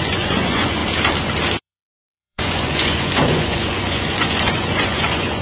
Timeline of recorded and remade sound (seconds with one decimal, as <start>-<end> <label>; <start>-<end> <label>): 0.0-0.8 remade; 0.8-1.6 recorded; 1.6-5.4 remade